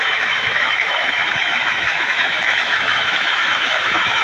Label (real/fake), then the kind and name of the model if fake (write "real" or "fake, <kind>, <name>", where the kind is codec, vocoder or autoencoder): fake, autoencoder, DAC-VAE